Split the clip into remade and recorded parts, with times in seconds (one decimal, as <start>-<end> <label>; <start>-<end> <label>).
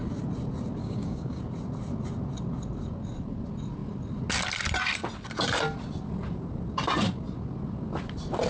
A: 0.0-0.8 recorded; 0.8-1.4 remade; 1.4-8.5 recorded